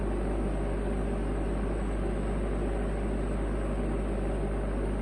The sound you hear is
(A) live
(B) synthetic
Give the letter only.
A